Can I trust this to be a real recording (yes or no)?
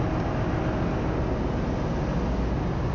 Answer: yes